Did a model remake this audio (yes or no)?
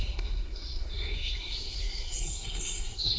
yes